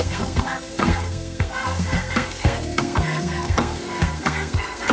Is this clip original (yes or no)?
no